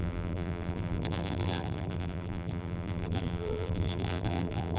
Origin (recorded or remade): remade